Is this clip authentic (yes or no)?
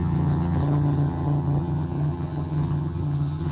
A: no